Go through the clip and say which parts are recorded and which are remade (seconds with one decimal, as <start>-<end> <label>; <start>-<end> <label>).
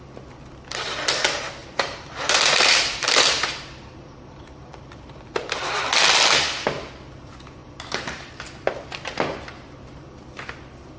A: 0.0-1.6 recorded; 1.6-5.6 remade; 5.6-7.6 recorded; 7.6-8.3 remade; 8.3-11.0 recorded